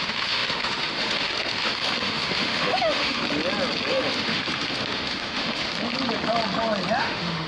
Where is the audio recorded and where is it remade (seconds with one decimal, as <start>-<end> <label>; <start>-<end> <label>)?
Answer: 0.0-3.2 remade; 3.2-3.9 recorded; 3.9-5.7 remade; 5.7-7.0 recorded; 7.0-7.5 remade